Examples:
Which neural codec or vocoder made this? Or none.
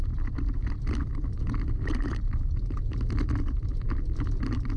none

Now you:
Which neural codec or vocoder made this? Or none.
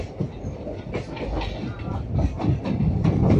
none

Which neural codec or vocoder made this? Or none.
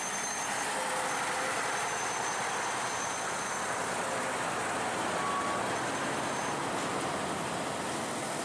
none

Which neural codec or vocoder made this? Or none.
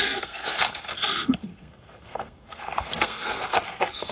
codec, SNAC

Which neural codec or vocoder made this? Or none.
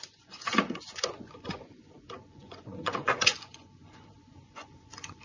vocoder, Vocos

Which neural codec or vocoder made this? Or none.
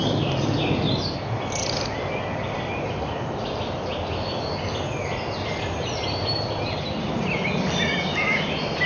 none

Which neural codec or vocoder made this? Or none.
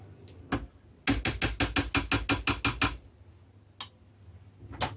none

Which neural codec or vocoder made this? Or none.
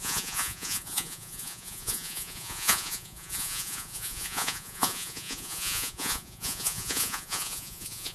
vocoder, Vocos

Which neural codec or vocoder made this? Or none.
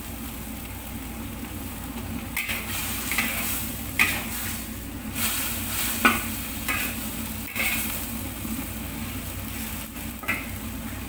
none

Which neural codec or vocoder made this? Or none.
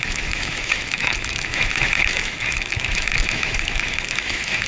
autoencoder, DAC-VAE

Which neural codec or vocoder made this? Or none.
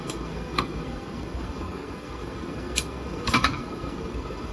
codec, SNAC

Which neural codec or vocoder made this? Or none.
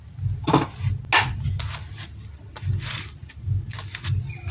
none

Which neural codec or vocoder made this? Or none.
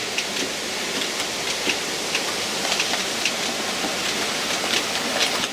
none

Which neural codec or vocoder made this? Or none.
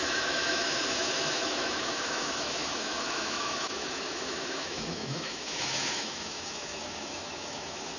autoencoder, DAC-VAE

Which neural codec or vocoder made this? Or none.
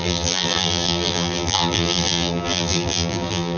vocoder, BigVGAN v2